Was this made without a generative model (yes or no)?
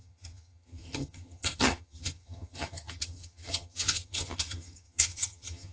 no